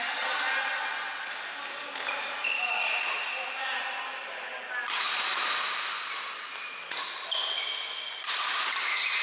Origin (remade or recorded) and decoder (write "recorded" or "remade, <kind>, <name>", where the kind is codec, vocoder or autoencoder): recorded